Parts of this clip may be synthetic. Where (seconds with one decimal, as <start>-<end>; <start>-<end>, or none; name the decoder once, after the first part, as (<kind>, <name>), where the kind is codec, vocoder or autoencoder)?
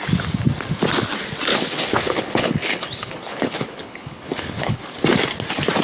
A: 1.5-4.8 (codec, HILCodec)